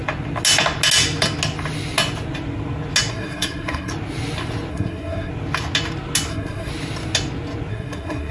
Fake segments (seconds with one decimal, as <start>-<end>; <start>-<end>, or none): 3.1-3.9; 4.7-5.3; 6.3-6.7; 7.7-8.3